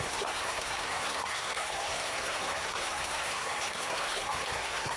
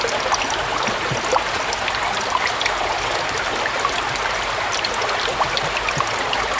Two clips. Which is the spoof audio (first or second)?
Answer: first